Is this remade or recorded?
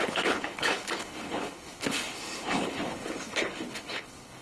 remade